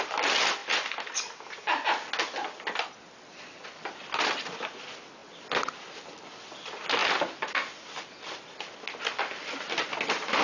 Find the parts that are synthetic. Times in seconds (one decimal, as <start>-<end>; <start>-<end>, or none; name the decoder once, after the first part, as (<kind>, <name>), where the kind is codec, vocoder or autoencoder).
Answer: none